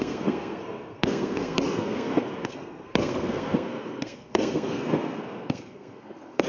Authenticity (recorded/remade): remade